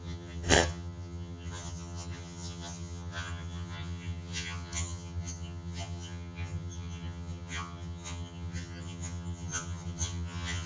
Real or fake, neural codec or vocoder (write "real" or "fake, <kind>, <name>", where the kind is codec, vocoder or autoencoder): fake, vocoder, HiFi-GAN